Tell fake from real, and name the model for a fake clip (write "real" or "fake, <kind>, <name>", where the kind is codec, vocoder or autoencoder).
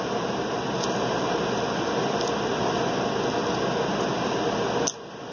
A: real